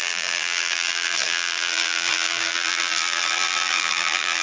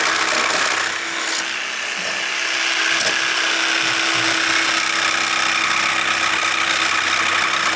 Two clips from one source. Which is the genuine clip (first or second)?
second